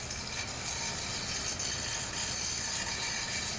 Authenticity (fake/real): real